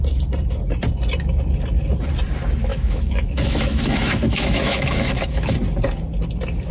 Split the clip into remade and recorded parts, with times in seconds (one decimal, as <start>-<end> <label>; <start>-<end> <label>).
0.0-2.7 recorded; 2.7-5.5 remade; 5.5-6.7 recorded